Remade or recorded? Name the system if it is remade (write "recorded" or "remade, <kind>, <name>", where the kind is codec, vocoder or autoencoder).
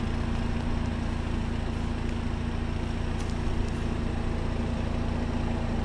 recorded